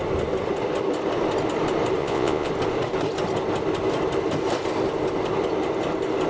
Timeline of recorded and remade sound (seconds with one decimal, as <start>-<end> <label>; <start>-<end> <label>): 0.0-2.0 recorded; 2.0-2.5 remade; 2.5-6.3 recorded